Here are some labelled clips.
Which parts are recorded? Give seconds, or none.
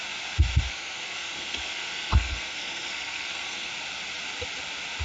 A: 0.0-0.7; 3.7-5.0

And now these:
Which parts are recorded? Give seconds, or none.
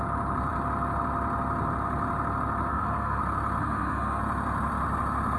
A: 0.0-2.7; 3.2-3.6; 4.2-5.4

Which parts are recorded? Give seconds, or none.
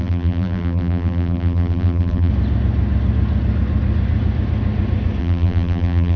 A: 2.3-5.2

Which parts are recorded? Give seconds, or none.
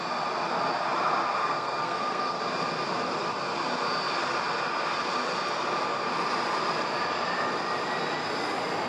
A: 0.0-1.4; 2.4-8.9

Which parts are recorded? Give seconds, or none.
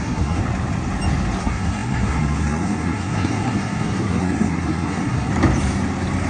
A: 0.4-1.4; 5.3-6.3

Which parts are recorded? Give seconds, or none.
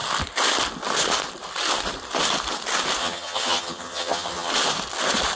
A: 0.0-3.0; 4.5-5.4